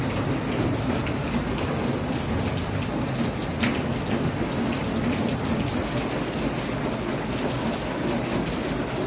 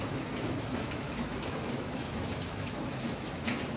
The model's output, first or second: second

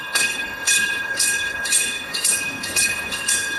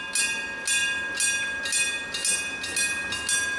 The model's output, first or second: first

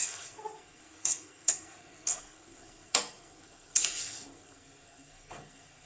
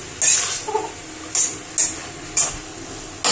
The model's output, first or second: first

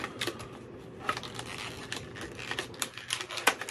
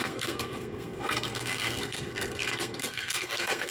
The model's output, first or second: second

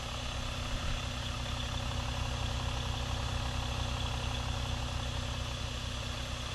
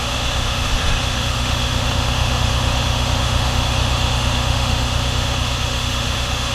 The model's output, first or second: second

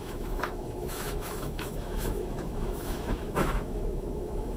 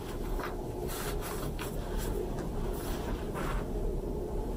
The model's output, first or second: first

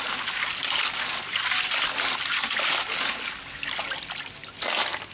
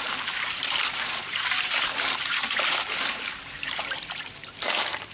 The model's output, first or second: second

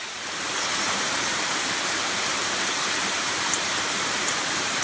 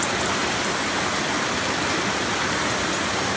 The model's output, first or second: first